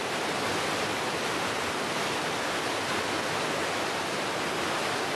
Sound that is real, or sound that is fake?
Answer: real